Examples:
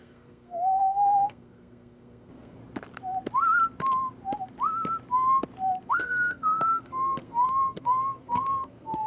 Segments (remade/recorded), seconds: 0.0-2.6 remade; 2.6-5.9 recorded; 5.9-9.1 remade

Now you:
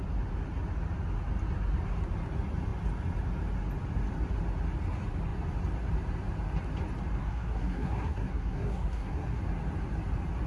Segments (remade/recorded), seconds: 0.0-7.2 recorded; 7.2-9.4 remade; 9.4-10.5 recorded

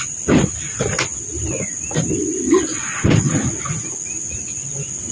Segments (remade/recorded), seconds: 0.0-5.1 recorded

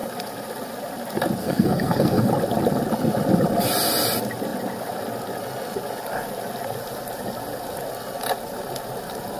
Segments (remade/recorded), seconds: 0.0-1.4 recorded; 1.4-2.3 remade; 2.3-9.4 recorded

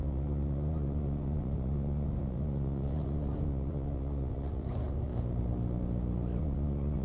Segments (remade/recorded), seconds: 0.0-5.1 remade; 5.1-6.4 recorded; 6.4-7.0 remade

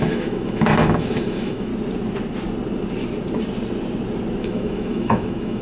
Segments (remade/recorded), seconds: 0.0-1.7 remade; 1.7-4.4 recorded; 4.4-5.6 remade